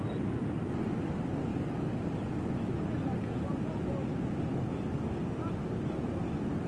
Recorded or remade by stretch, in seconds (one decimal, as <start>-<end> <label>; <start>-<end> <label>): 0.0-6.7 recorded